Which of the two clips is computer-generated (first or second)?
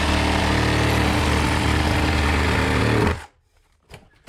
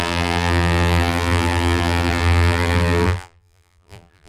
second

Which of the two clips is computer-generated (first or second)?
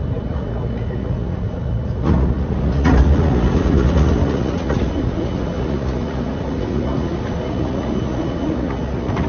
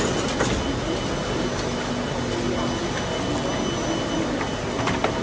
first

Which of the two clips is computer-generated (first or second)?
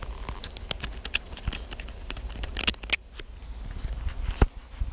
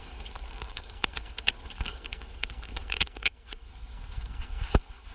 second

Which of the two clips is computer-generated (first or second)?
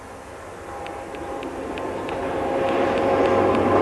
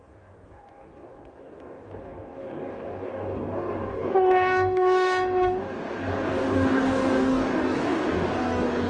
second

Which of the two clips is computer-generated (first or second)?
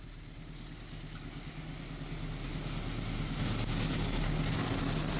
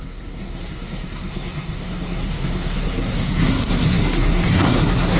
second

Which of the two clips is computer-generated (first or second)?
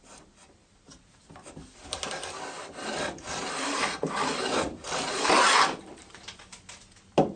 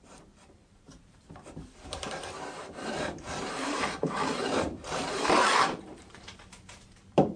second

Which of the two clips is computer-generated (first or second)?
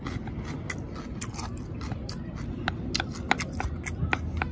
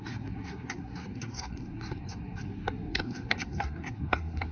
second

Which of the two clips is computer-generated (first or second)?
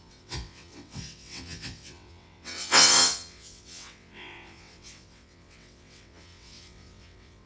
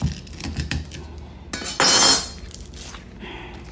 first